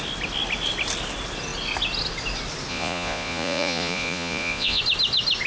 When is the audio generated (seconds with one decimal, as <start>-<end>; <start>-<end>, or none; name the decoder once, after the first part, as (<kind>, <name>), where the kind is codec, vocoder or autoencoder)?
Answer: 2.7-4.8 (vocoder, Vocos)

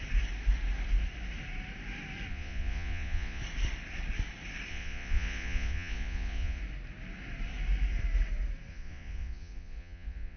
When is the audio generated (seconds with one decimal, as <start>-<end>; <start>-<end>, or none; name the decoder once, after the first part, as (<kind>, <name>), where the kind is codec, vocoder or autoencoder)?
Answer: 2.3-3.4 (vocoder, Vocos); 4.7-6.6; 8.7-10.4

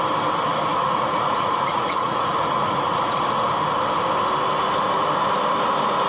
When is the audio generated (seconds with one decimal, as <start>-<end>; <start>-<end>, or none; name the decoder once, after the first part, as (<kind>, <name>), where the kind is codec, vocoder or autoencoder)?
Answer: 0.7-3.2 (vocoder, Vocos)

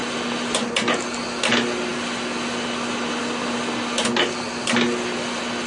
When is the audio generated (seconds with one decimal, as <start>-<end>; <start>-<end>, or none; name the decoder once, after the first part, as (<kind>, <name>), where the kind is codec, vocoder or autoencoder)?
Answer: none